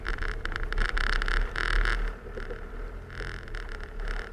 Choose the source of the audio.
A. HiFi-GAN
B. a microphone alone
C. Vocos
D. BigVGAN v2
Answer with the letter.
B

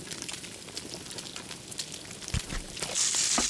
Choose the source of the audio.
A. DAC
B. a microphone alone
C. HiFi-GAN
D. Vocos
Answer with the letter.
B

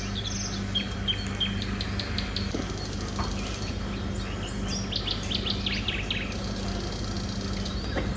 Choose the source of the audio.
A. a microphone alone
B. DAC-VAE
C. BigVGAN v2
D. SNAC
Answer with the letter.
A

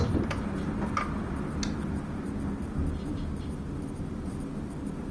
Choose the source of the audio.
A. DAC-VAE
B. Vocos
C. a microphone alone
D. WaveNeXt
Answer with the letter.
C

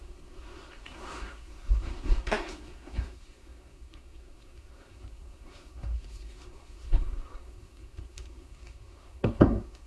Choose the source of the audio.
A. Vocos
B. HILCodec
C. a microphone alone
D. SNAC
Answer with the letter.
D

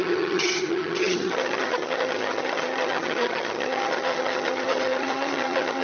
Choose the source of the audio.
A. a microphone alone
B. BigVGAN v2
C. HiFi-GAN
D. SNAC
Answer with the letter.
C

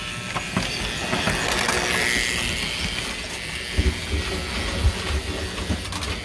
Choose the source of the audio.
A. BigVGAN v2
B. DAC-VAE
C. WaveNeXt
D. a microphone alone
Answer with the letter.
D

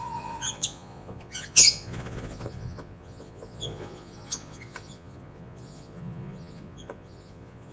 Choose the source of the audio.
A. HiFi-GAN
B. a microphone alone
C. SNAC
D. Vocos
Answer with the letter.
D